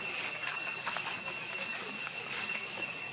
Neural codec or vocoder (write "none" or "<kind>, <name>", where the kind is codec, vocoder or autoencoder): codec, DAC